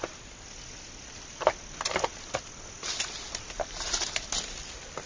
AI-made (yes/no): no